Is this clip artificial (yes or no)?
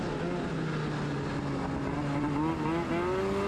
no